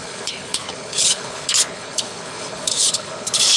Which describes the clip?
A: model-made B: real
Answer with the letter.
A